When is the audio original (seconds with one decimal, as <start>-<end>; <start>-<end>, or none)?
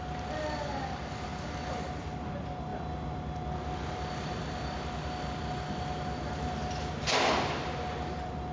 0.0-8.5